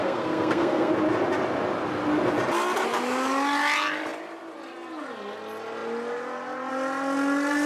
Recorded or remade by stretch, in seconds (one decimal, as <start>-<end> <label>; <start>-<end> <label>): 0.0-0.9 remade; 0.9-7.7 recorded